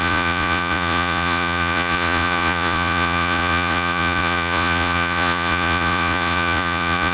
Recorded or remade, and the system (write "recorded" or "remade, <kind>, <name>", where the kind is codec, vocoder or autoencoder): remade, vocoder, Vocos